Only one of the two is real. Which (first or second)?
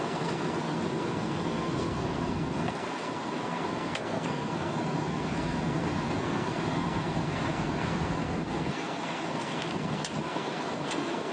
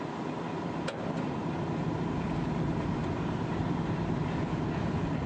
second